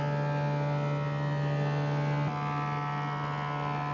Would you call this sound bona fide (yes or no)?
yes